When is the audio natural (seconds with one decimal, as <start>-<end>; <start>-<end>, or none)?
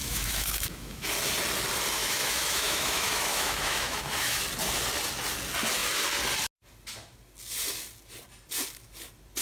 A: 1.1-2.0; 4.4-9.4